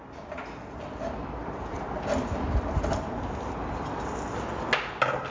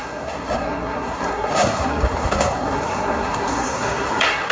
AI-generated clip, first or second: second